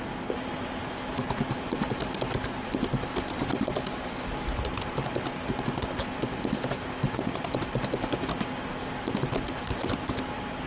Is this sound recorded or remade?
recorded